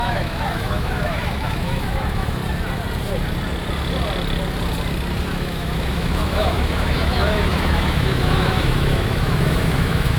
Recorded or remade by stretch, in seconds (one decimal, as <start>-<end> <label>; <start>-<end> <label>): 0.0-2.4 remade; 2.4-5.2 recorded; 5.2-10.2 remade